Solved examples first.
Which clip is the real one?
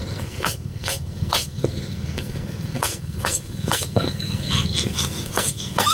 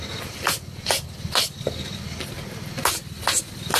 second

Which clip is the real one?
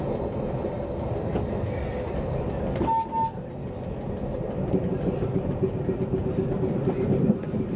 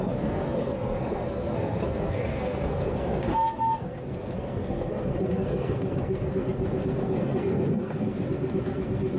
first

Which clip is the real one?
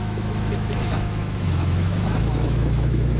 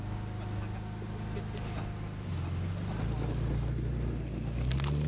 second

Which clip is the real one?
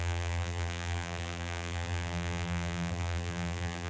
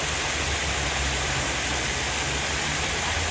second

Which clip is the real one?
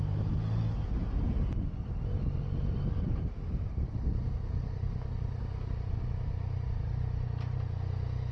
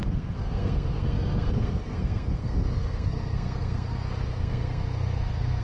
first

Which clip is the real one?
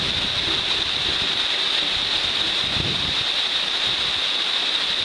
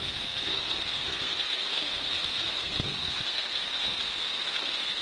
first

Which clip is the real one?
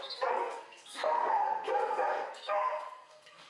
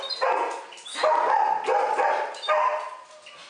second